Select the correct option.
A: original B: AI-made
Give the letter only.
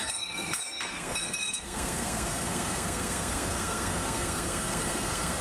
B